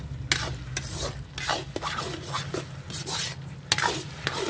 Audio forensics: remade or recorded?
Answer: recorded